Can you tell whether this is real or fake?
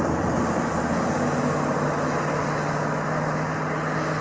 real